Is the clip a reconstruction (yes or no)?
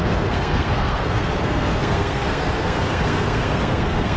yes